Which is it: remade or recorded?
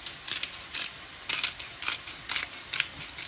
recorded